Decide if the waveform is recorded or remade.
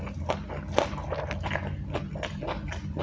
recorded